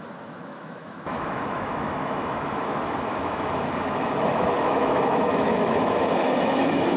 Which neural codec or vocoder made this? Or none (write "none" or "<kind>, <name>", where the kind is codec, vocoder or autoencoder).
autoencoder, DAC-VAE